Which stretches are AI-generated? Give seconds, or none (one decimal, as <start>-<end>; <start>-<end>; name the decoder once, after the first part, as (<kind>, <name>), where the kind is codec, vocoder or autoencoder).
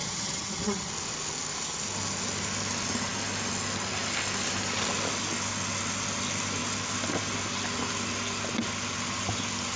0.0-0.9 (vocoder, HiFi-GAN)